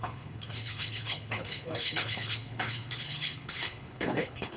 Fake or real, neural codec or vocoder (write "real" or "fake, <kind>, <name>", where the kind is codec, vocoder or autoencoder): fake, codec, HILCodec